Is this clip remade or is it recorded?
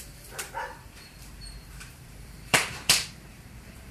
remade